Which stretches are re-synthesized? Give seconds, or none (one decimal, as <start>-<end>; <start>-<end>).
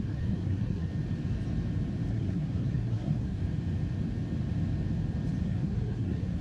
0.0-0.9; 2.1-3.4; 5.4-6.4